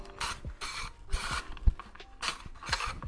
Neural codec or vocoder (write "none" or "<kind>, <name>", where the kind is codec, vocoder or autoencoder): none